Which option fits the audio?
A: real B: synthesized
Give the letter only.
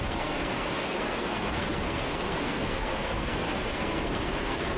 B